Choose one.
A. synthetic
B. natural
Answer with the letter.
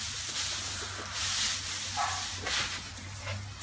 B